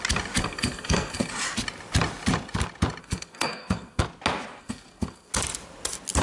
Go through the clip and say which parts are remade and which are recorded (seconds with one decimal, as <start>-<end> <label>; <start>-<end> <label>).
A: 0.0-0.4 recorded; 0.4-1.3 remade; 1.3-3.0 recorded; 3.0-4.0 remade; 4.0-4.6 recorded; 4.6-5.3 remade; 5.3-6.2 recorded